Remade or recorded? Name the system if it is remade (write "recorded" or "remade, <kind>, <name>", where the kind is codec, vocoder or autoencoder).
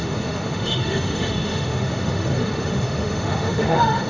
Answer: remade, autoencoder, DAC-VAE